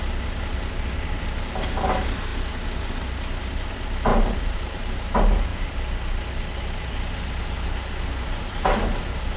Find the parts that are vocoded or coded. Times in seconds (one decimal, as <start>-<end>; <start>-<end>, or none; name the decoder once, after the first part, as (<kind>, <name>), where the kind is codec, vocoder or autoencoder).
4.1-5.0 (vocoder, BigVGAN v2)